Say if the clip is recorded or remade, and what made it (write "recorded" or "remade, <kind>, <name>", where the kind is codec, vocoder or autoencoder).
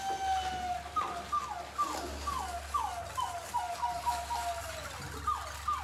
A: recorded